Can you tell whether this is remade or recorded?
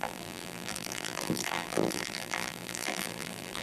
remade